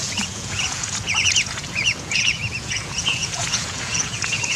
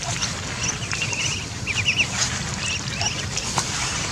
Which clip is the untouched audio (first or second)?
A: second